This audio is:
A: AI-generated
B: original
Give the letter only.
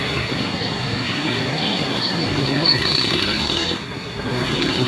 A